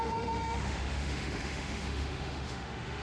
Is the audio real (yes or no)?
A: no